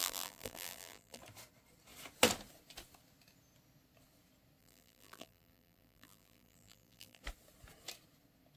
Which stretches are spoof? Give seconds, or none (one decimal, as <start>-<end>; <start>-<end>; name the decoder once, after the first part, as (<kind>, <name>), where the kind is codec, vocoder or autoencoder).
0.0-1.2 (vocoder, BigVGAN v2); 4.6-7.2